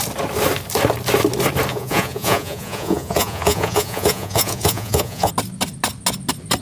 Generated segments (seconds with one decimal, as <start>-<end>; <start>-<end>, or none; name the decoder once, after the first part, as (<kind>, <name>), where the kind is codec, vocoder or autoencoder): 1.7-5.3 (vocoder, Vocos)